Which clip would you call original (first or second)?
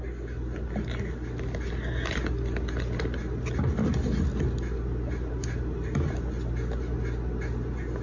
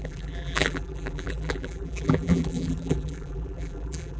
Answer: first